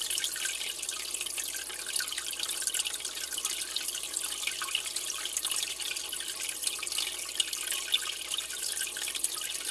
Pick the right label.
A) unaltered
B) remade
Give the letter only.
A